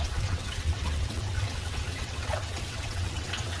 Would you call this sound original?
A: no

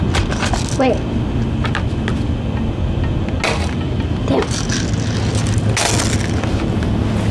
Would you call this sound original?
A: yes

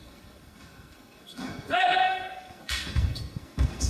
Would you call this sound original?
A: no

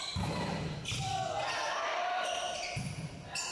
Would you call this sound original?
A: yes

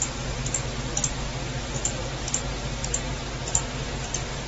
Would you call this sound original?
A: yes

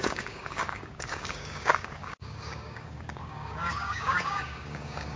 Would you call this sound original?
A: no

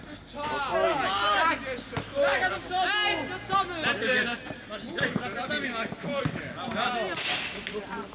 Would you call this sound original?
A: yes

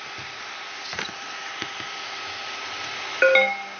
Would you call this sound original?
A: yes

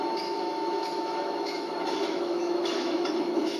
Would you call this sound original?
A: no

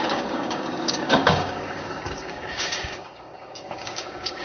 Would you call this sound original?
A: no